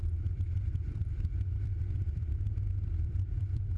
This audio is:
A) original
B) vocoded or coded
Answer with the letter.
B